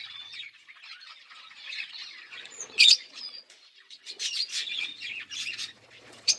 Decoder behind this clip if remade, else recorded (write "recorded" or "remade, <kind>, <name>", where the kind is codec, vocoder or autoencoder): remade, vocoder, Vocos